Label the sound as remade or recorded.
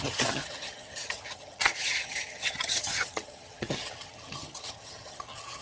remade